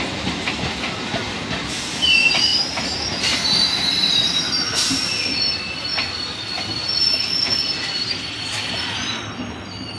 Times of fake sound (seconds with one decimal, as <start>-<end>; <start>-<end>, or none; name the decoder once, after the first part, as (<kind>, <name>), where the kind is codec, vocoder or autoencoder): none